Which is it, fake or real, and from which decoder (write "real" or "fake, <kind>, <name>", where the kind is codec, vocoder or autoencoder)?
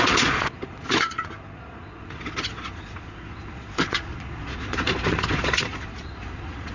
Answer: fake, vocoder, Vocos